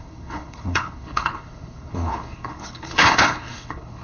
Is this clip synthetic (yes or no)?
yes